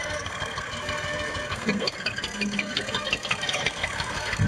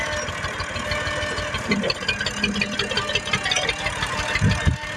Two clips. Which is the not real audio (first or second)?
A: first